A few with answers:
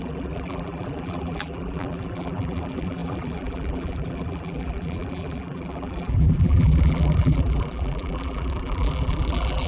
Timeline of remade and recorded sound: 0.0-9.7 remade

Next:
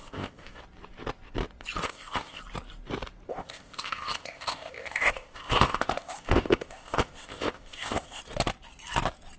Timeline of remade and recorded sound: 0.0-0.6 remade; 0.6-1.8 recorded; 1.8-2.4 remade; 2.4-3.3 recorded; 3.3-8.2 remade; 8.2-9.4 recorded